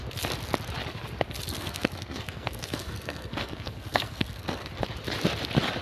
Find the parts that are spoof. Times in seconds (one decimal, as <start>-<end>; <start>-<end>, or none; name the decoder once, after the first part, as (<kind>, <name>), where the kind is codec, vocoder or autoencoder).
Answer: 1.5-4.7 (codec, SNAC)